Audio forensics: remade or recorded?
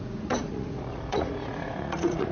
remade